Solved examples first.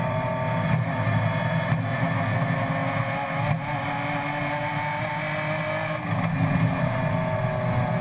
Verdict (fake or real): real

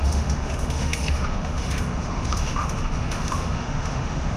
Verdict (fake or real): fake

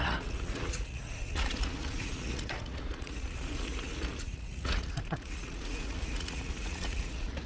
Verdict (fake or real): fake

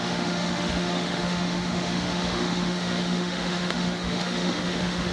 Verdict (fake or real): fake